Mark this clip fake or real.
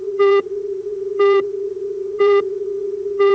fake